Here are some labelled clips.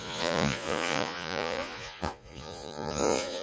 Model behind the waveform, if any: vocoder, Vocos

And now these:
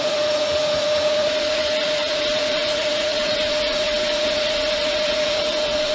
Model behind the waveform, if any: vocoder, Vocos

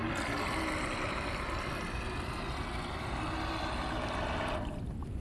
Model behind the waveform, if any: none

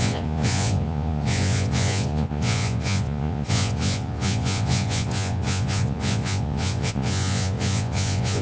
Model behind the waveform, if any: vocoder, Vocos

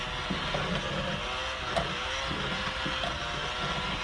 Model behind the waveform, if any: none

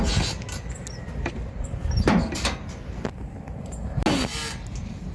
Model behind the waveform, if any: none